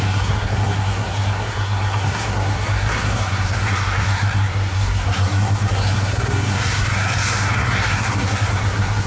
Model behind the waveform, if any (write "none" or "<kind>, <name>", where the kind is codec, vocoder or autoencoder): codec, SNAC